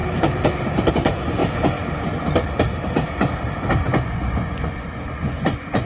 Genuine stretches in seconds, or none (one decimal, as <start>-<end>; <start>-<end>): 0.0-0.9; 1.4-3.8